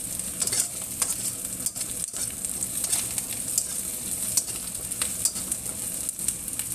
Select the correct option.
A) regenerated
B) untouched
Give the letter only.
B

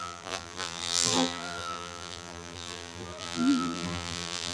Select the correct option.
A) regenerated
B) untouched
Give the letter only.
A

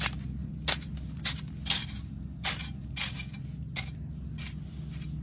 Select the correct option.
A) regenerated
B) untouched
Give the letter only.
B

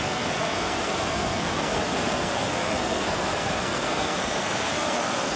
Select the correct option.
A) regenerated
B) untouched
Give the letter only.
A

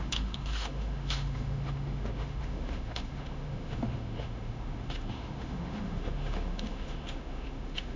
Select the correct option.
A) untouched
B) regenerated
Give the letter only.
B